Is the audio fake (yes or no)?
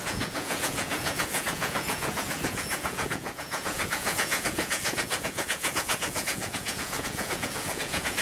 yes